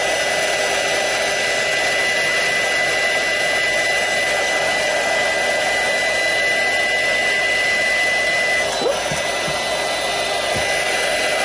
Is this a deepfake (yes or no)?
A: no